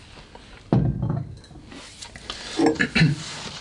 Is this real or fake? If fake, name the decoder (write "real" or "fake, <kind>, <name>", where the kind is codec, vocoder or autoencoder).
real